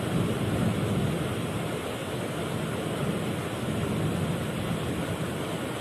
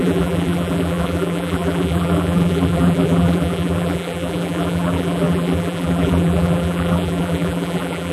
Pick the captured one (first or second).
first